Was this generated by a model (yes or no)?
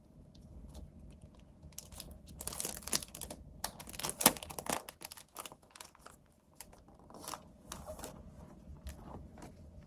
no